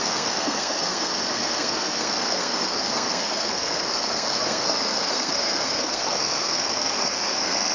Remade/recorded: remade